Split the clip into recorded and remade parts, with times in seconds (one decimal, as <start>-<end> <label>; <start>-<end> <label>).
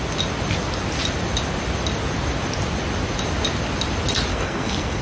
0.0-4.3 recorded; 4.3-5.0 remade